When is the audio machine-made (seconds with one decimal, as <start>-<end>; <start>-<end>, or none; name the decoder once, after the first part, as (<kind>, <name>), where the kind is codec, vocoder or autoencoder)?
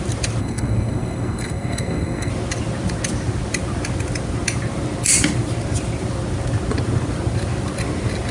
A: 0.4-2.3 (codec, SNAC)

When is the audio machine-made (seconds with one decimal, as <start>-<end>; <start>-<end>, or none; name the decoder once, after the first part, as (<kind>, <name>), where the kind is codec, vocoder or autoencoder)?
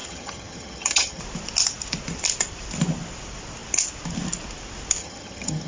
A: 0.0-1.2 (vocoder, HiFi-GAN); 5.0-5.7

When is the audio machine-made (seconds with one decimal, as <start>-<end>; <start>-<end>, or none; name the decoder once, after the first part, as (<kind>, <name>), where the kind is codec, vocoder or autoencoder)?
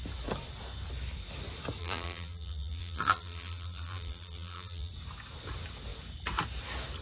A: 1.8-4.9 (vocoder, BigVGAN v2)